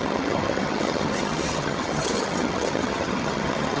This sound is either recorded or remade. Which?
remade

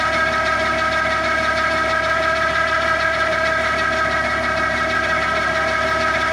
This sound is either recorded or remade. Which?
remade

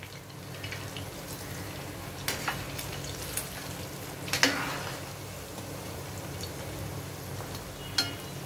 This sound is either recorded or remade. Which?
recorded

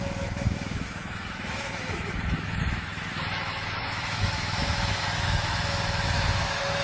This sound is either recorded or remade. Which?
remade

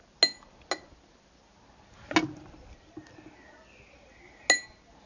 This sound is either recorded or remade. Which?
recorded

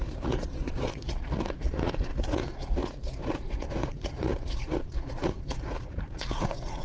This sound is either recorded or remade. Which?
remade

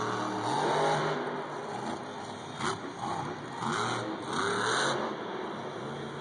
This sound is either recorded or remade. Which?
recorded